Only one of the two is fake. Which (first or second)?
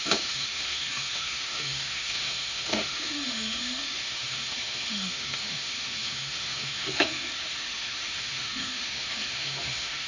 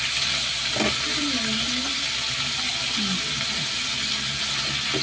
first